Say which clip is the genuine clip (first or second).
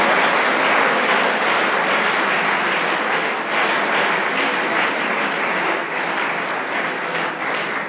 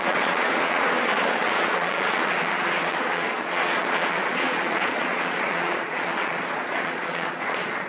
first